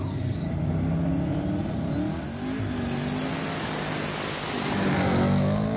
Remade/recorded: recorded